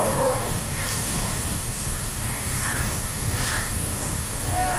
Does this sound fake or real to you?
fake